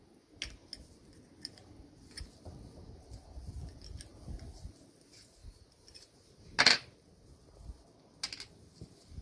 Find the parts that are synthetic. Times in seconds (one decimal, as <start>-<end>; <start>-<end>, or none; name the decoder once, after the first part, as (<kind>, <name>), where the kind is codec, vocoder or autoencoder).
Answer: none